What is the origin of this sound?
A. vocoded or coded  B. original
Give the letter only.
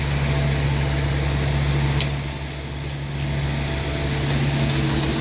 B